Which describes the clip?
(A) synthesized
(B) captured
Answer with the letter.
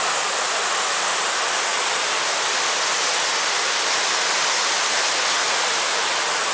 B